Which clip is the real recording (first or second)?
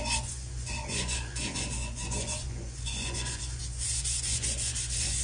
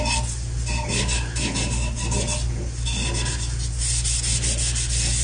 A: second